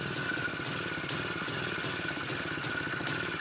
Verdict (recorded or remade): recorded